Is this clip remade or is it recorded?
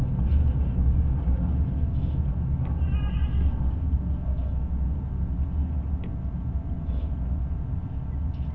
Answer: recorded